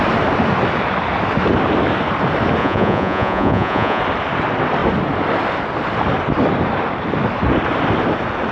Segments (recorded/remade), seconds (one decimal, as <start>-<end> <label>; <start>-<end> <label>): 0.0-2.6 recorded; 2.6-4.0 remade; 4.0-8.5 recorded